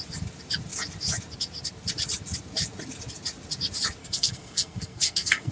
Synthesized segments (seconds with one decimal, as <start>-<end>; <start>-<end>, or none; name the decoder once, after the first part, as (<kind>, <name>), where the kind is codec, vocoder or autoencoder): 4.0-5.5 (codec, SNAC)